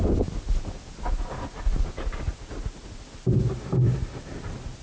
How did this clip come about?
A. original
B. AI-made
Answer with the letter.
A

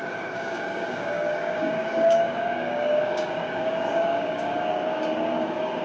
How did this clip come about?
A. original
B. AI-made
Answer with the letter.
B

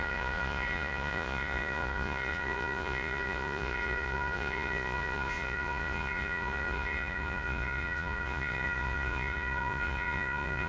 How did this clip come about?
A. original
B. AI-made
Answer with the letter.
B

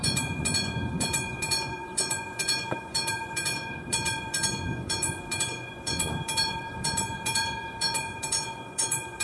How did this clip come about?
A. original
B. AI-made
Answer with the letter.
B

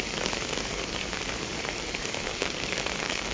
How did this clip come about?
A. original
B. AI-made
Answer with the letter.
B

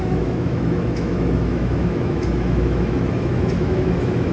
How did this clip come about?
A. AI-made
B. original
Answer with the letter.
A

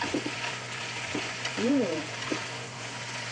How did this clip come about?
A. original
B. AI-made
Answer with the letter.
B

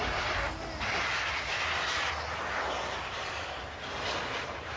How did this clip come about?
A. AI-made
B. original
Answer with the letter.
B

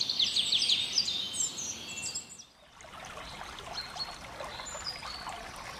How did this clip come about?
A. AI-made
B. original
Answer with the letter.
B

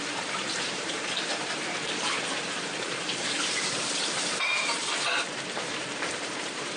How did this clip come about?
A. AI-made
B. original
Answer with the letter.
A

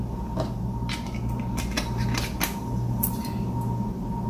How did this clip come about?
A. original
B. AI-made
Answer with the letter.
A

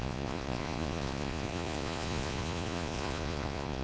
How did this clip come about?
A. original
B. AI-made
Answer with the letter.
B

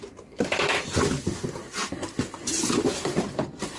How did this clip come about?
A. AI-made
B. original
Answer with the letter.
B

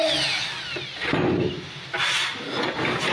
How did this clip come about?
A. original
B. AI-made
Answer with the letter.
A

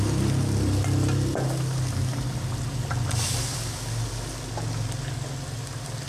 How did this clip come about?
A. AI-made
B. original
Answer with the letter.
B